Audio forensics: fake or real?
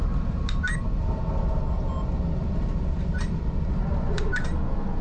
real